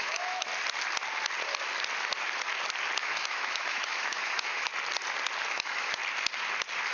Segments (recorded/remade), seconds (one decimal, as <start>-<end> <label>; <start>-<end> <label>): 0.0-0.5 remade; 0.5-3.0 recorded; 3.0-4.7 remade; 4.7-5.5 recorded; 5.5-6.0 remade; 6.0-6.9 recorded